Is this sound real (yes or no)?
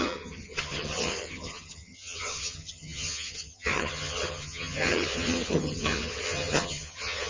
no